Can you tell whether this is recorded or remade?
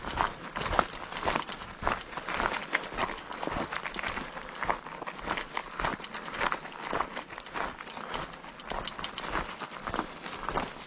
recorded